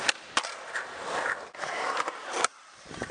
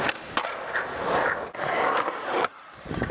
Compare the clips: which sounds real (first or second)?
second